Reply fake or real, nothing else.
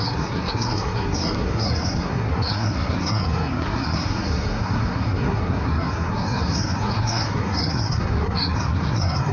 fake